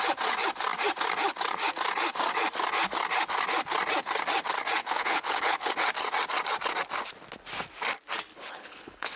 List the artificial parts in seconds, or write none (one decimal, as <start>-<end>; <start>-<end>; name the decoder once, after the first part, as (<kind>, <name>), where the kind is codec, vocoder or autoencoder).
4.8-5.7 (codec, HILCodec); 8.3-9.2

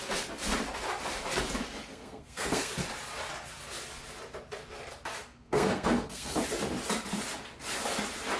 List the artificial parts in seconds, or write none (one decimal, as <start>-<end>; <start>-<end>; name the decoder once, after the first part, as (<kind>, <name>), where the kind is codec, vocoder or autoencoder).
1.8-2.7 (codec, SNAC); 5.2-6.4

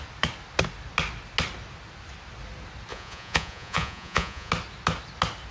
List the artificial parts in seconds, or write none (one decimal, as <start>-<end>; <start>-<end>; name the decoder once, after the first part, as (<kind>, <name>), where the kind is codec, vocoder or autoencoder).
2.9-4.5 (vocoder, Vocos)

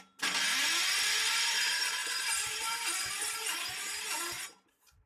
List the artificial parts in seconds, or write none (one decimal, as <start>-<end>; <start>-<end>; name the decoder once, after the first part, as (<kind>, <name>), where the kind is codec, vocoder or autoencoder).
none

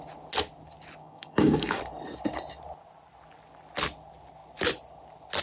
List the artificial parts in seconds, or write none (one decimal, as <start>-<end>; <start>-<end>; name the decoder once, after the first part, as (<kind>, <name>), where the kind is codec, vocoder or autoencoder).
1.0-1.8 (codec, DAC)